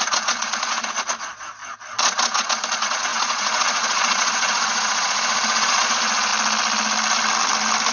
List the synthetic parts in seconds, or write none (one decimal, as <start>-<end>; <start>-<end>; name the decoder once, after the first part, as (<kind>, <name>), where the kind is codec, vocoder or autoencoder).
0.0-6.3 (vocoder, Vocos)